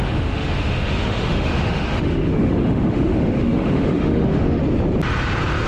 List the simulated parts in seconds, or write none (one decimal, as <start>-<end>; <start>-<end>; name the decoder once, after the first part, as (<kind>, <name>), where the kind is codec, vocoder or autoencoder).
0.0-4.6 (autoencoder, DAC-VAE)